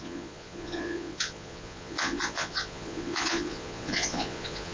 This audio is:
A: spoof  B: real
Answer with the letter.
A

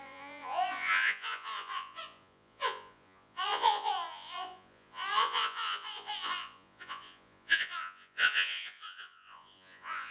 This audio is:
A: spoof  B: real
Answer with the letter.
A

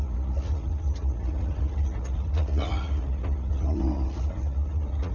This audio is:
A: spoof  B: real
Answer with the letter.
A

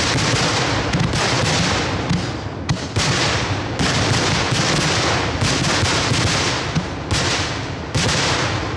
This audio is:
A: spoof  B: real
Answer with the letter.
B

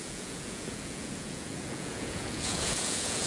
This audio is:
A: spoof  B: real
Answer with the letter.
A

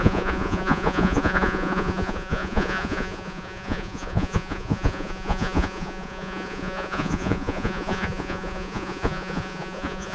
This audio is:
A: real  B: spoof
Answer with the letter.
B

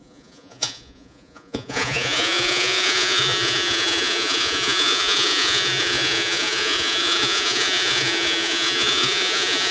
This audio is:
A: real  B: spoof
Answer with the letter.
B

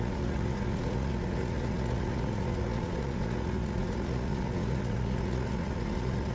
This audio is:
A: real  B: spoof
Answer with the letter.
B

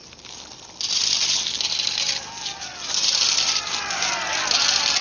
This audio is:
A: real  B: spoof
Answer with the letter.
A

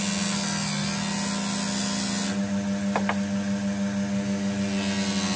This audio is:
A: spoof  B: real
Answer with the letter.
B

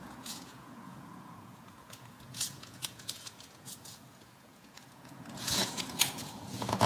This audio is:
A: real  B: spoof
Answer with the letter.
B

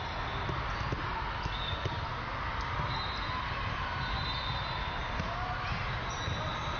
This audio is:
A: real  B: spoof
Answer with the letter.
A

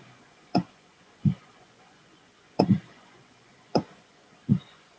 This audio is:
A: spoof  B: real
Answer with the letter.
A